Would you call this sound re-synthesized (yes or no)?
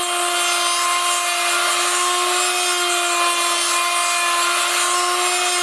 no